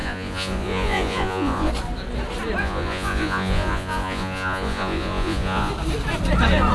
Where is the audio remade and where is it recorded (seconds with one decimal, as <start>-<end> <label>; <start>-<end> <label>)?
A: 0.0-1.7 remade; 1.7-2.6 recorded; 2.6-5.7 remade; 5.7-6.7 recorded